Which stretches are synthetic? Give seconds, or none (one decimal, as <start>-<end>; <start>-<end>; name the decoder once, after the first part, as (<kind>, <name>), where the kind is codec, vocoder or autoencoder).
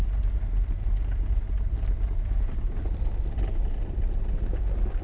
none